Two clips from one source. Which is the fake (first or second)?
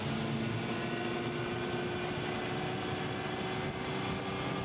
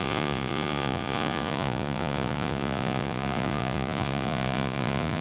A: second